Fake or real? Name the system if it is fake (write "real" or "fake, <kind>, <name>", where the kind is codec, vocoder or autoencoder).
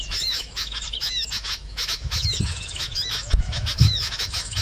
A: fake, autoencoder, DAC-VAE